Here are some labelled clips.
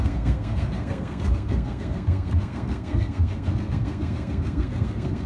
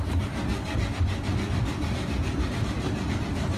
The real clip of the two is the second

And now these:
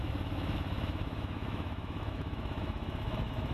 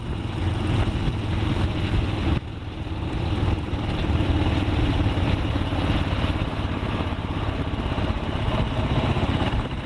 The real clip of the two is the second